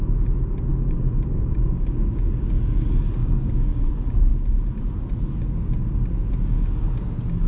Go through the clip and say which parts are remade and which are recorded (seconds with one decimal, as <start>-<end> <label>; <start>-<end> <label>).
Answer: 0.0-0.7 recorded; 0.7-2.6 remade; 2.6-3.2 recorded; 3.2-3.8 remade; 3.8-7.5 recorded